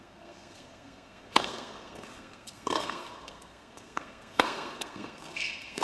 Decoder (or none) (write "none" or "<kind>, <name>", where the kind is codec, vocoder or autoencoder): codec, SNAC